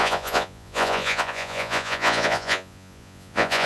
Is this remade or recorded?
remade